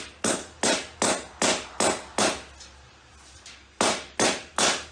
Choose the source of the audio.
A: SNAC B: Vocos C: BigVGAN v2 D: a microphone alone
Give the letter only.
D